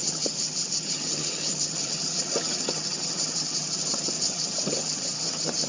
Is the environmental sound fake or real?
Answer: fake